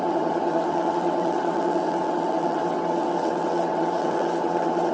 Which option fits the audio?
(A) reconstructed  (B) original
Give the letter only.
A